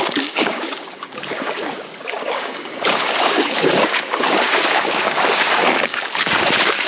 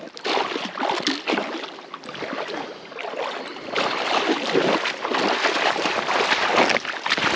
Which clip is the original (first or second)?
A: second